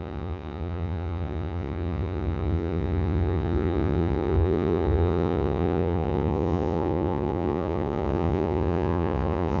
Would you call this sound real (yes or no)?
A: no